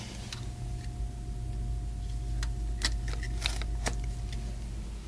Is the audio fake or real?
real